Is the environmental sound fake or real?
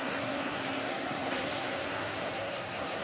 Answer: fake